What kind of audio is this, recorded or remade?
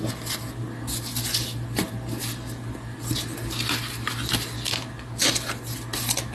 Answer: recorded